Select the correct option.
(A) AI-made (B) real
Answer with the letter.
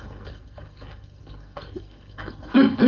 A